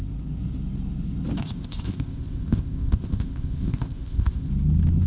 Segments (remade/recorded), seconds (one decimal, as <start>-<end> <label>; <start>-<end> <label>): 0.0-1.4 recorded; 1.4-4.5 remade; 4.5-5.1 recorded

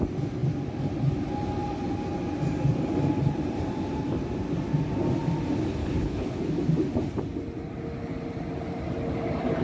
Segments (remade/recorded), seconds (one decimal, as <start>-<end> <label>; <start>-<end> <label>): 0.0-5.8 recorded; 5.8-6.5 remade; 6.5-9.6 recorded

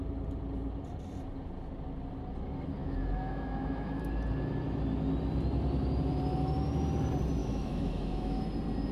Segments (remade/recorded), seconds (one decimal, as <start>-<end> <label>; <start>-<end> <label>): 0.0-2.8 recorded; 2.8-4.1 remade; 4.1-7.4 recorded; 7.4-8.4 remade; 8.4-8.9 recorded

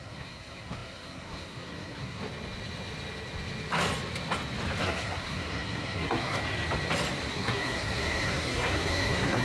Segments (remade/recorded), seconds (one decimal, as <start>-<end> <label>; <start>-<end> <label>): 0.0-2.2 remade; 2.2-4.8 recorded; 4.8-6.4 remade; 6.4-7.3 recorded; 7.3-9.4 remade

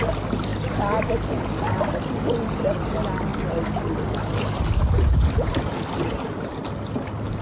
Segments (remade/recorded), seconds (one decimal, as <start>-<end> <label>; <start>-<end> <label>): 0.0-7.4 recorded

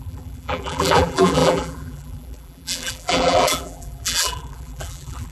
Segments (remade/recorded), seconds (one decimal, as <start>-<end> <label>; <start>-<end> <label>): 0.0-5.3 remade

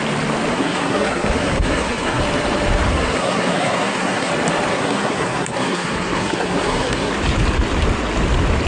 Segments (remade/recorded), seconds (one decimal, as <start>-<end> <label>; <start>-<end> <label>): 0.0-0.5 recorded; 0.5-2.2 remade; 2.2-2.9 recorded; 2.9-4.3 remade; 4.3-4.7 recorded; 4.7-7.1 remade; 7.1-8.7 recorded

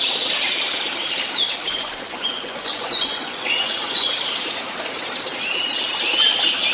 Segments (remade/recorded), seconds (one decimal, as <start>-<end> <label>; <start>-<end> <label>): 0.0-1.7 recorded; 1.7-4.1 remade; 4.1-6.7 recorded